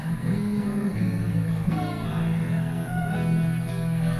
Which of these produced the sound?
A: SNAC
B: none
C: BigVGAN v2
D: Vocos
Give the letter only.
A